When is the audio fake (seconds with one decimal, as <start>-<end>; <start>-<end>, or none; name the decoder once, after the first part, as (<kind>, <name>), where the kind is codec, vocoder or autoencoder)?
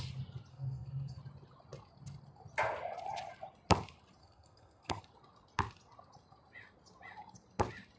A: 0.5-1.2 (codec, SNAC); 4.2-5.0